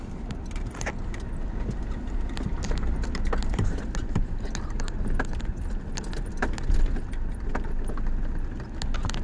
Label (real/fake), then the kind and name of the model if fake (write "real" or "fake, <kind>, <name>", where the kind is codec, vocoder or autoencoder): real